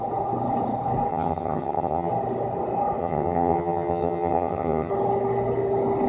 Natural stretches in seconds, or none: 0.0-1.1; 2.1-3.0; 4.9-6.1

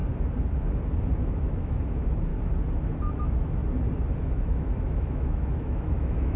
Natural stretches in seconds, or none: 0.0-1.2; 2.3-3.2; 3.6-4.2

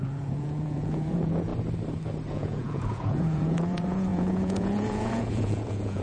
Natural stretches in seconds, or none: 1.5-2.3

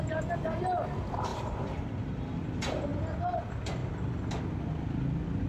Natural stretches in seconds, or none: 0.0-1.3; 2.4-5.5